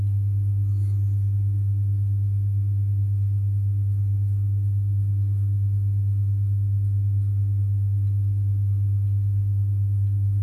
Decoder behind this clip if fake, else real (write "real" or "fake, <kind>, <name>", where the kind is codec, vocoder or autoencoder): real